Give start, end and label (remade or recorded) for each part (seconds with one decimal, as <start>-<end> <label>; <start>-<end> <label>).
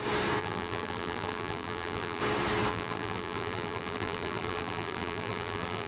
0.0-0.4 recorded; 0.4-2.2 remade; 2.2-2.7 recorded; 2.7-5.9 remade